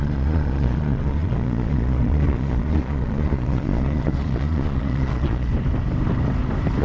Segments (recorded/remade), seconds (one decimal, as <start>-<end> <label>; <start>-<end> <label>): 0.0-5.5 remade; 5.5-6.8 recorded